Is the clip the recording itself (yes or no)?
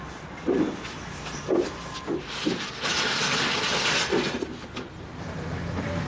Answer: yes